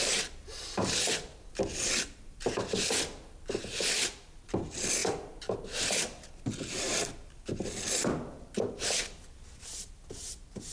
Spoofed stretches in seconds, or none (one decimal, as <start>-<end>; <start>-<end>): none